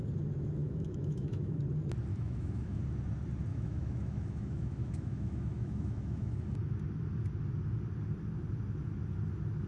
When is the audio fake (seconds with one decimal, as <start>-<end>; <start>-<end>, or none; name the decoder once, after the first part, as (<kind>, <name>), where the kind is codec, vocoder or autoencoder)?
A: 0.6-1.6 (autoencoder, DAC-VAE); 2.1-2.8; 3.5-6.4